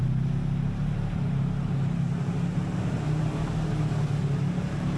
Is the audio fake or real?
real